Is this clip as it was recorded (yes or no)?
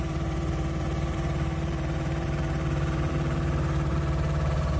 no